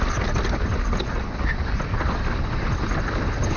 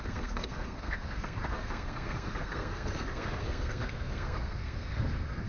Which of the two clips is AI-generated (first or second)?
second